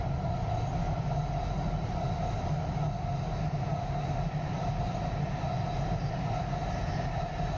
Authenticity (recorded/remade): recorded